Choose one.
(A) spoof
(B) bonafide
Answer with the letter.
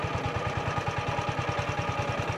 B